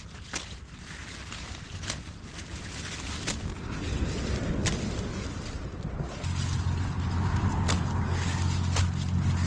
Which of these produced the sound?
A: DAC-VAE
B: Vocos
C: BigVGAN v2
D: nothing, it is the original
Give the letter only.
D